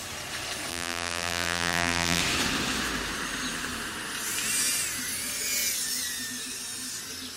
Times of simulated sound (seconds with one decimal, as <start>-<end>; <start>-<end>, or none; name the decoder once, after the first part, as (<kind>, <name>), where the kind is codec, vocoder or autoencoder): 0.7-2.2 (vocoder, BigVGAN v2)